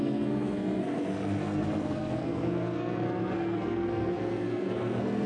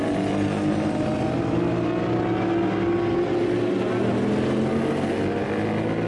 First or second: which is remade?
first